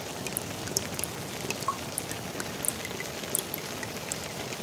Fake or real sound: real